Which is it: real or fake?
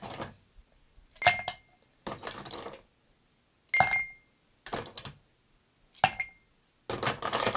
real